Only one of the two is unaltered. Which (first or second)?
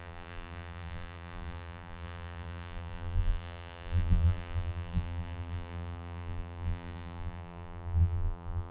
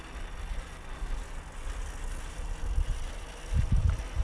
second